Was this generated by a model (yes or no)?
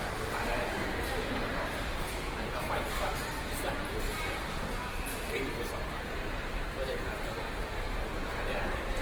yes